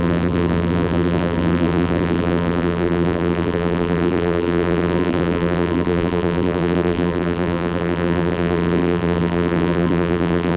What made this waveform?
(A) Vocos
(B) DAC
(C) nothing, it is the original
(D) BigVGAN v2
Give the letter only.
D